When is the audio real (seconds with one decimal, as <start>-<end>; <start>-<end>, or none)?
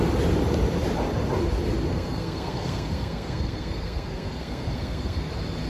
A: 0.0-1.9; 5.3-5.7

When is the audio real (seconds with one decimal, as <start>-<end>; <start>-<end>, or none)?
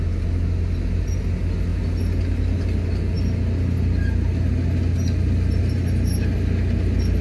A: 0.0-7.2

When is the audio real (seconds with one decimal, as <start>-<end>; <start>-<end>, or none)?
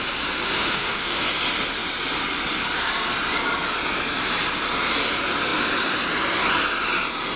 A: 0.0-0.6; 1.2-7.4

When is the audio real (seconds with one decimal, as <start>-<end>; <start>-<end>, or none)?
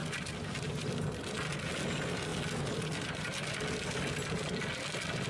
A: 0.0-5.3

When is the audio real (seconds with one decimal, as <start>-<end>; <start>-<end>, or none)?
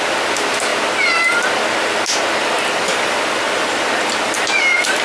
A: 0.7-2.7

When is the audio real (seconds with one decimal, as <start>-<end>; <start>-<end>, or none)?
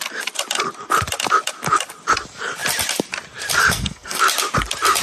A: 0.0-3.6; 4.2-5.0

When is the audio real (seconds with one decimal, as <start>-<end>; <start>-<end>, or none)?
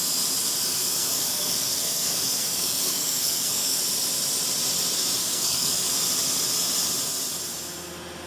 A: 0.0-0.7; 3.8-5.2; 5.9-8.3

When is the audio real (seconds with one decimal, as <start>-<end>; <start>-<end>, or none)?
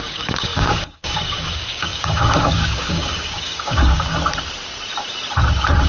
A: 4.1-5.9